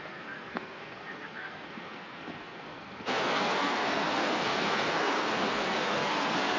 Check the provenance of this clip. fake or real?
fake